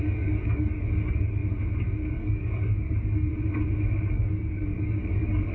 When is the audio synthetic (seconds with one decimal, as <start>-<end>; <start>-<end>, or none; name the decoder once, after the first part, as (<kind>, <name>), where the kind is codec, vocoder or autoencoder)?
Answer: 0.0-1.4 (codec, DAC); 2.1-3.3; 4.0-5.5